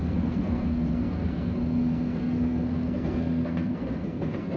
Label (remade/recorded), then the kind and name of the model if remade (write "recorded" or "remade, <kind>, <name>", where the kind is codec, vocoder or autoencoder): remade, codec, SNAC